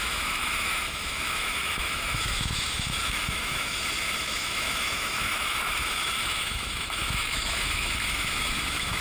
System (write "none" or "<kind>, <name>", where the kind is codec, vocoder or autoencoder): autoencoder, DAC-VAE